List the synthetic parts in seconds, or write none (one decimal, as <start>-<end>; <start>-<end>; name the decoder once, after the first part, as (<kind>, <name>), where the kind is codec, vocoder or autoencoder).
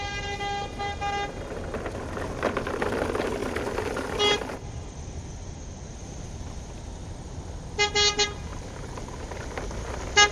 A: 3.4-6.4 (vocoder, BigVGAN v2)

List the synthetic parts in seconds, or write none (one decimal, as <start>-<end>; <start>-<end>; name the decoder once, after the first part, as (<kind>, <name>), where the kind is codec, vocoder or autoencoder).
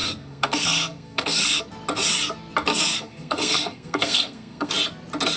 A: 0.0-1.6 (codec, SNAC); 2.7-4.7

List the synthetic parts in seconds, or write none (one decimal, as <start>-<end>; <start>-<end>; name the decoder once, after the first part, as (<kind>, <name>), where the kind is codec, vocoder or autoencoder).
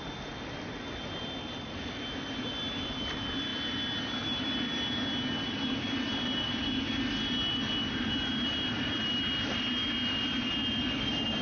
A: none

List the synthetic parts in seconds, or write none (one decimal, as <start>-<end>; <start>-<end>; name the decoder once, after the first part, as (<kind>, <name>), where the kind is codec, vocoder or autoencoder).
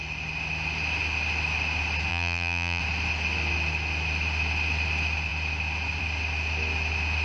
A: 2.1-2.8 (vocoder, BigVGAN v2)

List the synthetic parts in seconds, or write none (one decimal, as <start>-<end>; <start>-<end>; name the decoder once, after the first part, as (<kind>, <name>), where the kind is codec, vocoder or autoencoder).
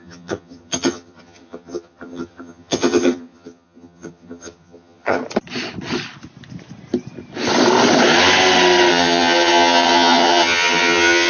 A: 0.0-5.2 (vocoder, HiFi-GAN); 8.9-11.3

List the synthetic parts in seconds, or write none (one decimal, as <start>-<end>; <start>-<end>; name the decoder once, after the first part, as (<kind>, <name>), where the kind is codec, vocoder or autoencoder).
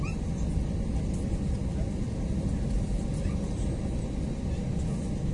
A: none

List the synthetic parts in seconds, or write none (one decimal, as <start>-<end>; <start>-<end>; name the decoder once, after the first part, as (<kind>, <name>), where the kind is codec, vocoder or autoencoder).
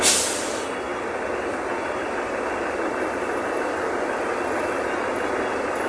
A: none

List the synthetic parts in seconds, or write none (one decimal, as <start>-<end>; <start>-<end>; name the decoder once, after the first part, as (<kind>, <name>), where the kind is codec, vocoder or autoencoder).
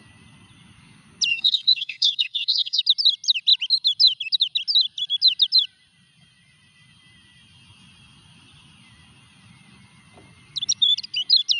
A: 1.3-2.8 (codec, SNAC)